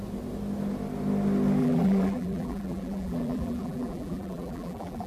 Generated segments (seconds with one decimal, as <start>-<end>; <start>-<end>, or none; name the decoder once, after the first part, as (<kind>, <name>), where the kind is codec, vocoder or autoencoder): 1.6-5.1 (vocoder, BigVGAN v2)